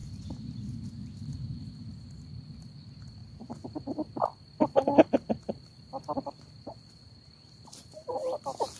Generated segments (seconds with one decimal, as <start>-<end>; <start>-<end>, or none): none